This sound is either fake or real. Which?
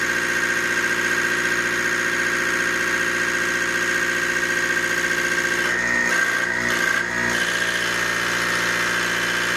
real